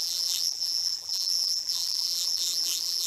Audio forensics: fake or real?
fake